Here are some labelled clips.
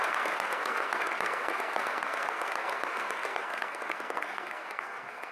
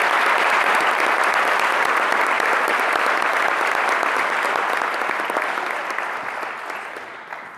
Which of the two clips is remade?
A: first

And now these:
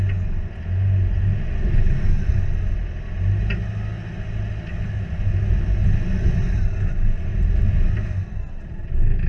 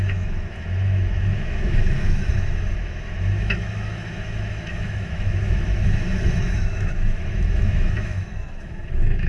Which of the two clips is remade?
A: second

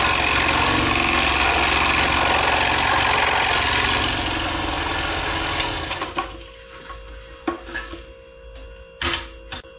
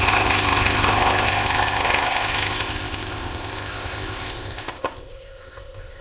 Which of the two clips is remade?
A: second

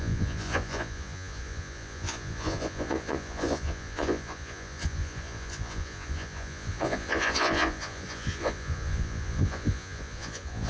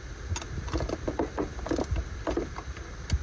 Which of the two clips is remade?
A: first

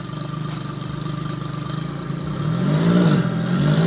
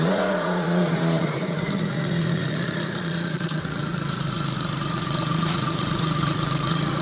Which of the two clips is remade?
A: second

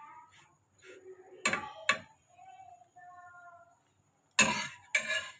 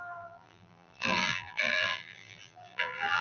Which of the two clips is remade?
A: second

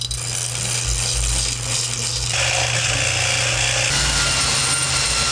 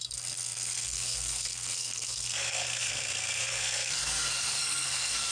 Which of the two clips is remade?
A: second